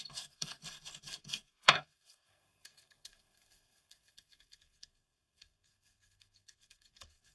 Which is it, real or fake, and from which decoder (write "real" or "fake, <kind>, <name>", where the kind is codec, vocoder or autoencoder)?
fake, codec, SNAC